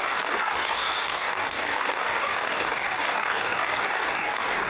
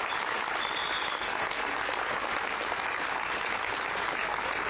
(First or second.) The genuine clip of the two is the second